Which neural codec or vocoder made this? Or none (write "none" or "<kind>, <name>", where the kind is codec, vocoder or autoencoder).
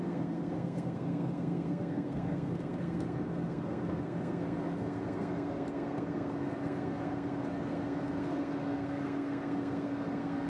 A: codec, SNAC